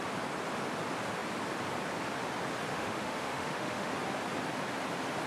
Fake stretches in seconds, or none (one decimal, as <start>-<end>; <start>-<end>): 2.7-3.9